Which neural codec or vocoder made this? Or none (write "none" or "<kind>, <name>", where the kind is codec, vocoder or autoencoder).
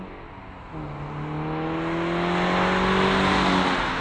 none